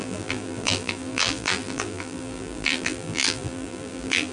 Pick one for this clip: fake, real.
fake